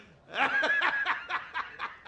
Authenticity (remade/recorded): recorded